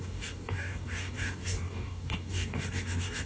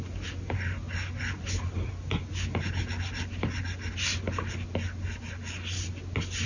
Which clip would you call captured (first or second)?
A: second